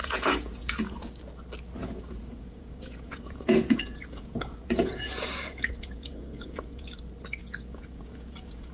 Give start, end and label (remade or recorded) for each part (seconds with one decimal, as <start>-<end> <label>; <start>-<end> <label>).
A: 0.0-1.2 remade; 1.2-1.8 recorded; 1.8-7.0 remade; 7.0-7.4 recorded; 7.4-8.7 remade